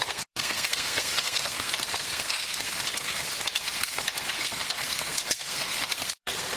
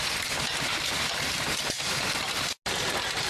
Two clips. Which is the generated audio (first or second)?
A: first